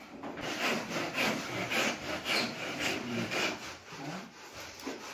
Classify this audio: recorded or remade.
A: remade